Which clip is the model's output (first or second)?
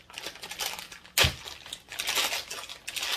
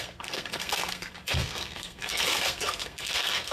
second